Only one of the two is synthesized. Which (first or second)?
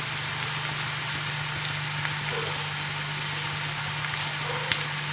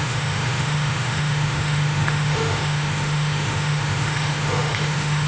second